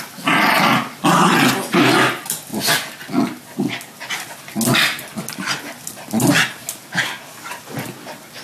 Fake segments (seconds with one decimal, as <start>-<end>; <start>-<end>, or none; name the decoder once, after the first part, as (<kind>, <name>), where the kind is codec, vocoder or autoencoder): none